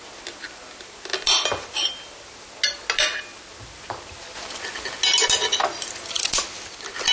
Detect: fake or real real